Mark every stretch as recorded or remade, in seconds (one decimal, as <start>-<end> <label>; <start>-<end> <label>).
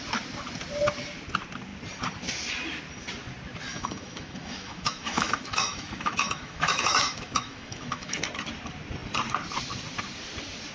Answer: 0.0-3.7 recorded; 3.7-8.2 remade; 8.2-10.7 recorded